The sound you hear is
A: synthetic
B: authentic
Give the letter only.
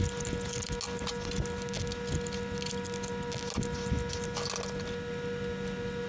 B